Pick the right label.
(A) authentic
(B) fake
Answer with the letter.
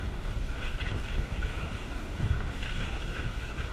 B